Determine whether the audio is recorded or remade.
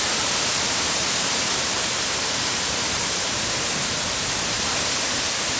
remade